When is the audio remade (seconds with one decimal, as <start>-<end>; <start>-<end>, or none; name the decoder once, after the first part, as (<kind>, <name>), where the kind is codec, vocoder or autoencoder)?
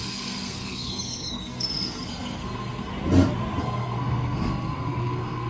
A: 0.0-2.9 (codec, SNAC); 3.6-5.5